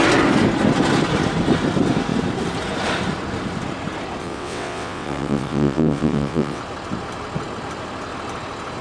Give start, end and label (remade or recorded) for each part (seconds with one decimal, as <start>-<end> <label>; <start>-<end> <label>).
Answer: 0.0-4.2 recorded; 4.2-6.6 remade; 6.6-8.8 recorded